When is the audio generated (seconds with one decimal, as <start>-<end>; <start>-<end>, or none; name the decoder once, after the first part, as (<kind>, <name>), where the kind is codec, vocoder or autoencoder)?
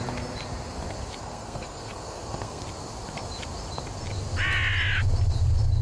1.2-2.6 (codec, SNAC)